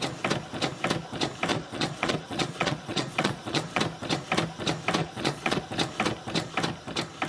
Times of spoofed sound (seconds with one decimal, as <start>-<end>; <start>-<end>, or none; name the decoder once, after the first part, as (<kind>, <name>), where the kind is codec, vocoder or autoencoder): 1.5-3.8 (vocoder, Vocos); 5.0-5.6